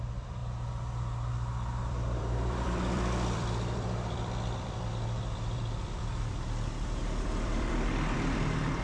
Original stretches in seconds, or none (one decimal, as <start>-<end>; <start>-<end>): 0.4-1.8